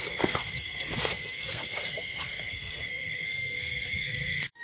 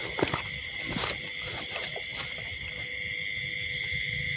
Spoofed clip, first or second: first